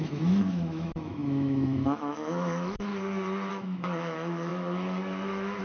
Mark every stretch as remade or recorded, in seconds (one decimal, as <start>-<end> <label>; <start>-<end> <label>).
0.0-2.9 remade; 2.9-3.5 recorded; 3.5-5.6 remade